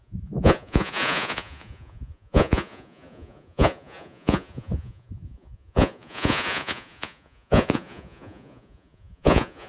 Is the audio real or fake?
fake